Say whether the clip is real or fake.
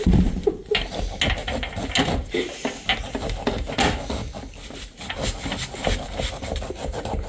real